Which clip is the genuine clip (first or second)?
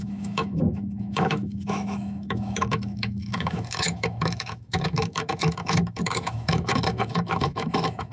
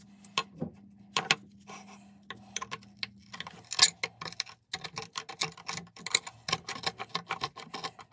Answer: second